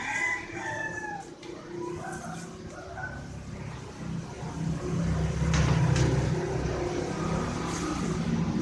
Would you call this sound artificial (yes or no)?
no